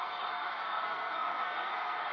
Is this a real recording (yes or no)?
no